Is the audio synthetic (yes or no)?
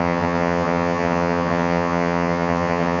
yes